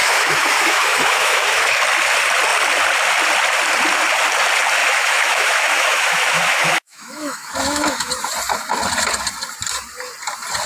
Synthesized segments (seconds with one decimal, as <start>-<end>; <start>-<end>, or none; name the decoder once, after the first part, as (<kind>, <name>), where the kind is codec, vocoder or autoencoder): 0.0-1.7 (autoencoder, DAC-VAE); 4.8-8.1